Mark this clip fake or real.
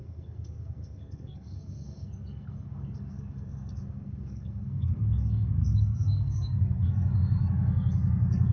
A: fake